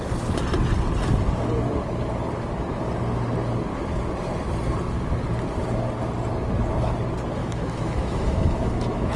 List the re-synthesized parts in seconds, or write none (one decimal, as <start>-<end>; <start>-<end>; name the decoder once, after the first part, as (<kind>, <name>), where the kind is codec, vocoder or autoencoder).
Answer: 7.4-9.2 (autoencoder, DAC-VAE)

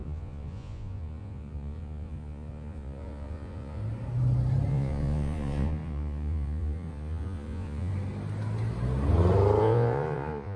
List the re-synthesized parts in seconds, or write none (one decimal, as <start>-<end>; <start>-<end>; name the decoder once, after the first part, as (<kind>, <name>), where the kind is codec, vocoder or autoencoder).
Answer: 0.0-3.8 (vocoder, Vocos); 4.7-7.9; 9.6-10.6

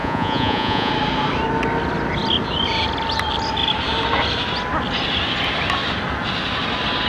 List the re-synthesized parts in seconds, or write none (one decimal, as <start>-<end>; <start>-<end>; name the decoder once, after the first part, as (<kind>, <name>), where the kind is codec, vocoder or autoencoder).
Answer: 0.0-0.9 (vocoder, Vocos)

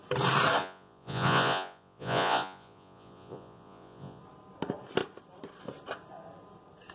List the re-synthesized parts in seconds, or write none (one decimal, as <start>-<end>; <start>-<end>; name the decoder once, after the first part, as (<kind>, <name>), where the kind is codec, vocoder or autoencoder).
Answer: 0.6-4.2 (vocoder, Vocos)

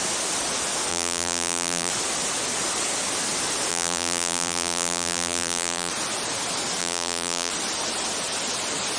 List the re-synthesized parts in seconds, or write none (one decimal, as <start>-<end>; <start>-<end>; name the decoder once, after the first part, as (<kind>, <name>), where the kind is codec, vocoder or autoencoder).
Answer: 0.9-1.9 (vocoder, BigVGAN v2); 3.7-5.9; 6.8-7.5

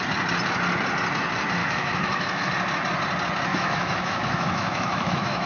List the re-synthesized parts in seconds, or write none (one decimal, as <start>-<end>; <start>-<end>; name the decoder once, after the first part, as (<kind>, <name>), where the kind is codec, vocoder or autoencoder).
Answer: 1.6-2.5 (autoencoder, DAC-VAE); 3.5-5.5